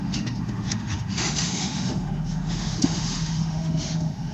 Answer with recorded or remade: remade